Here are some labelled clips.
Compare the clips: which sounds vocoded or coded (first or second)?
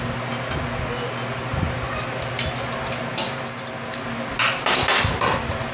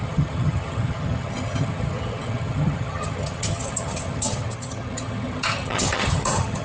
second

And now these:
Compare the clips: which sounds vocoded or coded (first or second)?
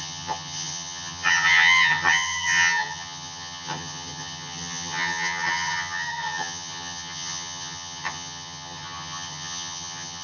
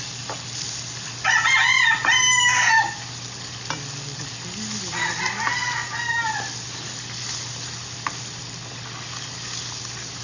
first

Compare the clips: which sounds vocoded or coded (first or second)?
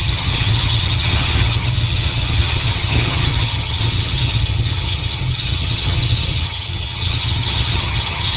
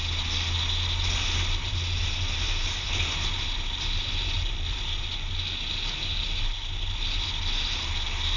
first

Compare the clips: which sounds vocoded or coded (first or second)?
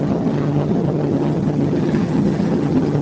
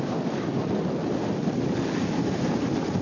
first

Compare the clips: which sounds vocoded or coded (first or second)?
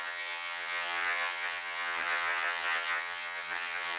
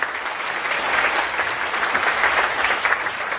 first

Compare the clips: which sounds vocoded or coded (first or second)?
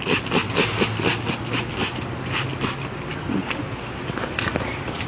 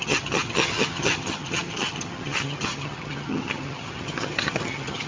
second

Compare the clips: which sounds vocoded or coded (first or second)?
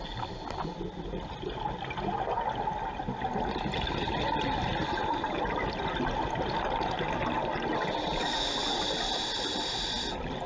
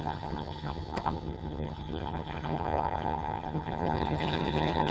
second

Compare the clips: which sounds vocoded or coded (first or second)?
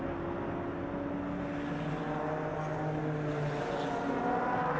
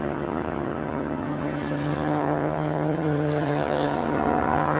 second